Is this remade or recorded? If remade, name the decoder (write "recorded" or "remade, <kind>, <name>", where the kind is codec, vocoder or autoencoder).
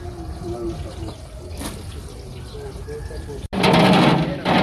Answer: recorded